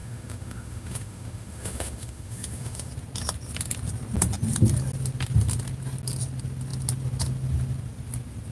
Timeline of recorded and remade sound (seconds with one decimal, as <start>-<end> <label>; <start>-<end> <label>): 0.0-2.9 remade; 2.9-8.5 recorded